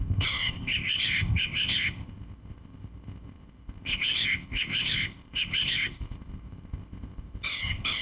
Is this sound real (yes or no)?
no